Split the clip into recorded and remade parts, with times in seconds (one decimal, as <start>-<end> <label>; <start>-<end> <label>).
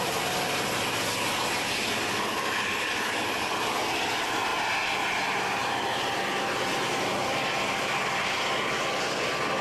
0.0-2.1 recorded; 2.1-3.6 remade; 3.6-9.6 recorded